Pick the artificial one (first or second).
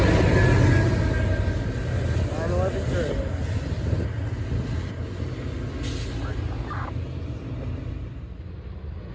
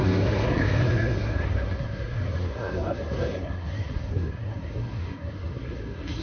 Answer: second